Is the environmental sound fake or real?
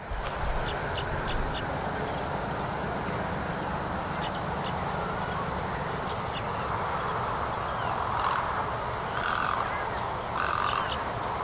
real